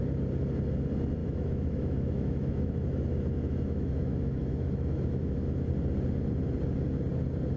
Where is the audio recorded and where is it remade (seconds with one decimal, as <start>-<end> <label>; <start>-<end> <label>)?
0.0-1.2 recorded; 1.2-5.7 remade; 5.7-7.6 recorded